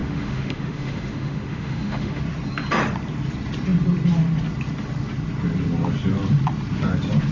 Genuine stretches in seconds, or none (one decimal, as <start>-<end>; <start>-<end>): 2.2-7.3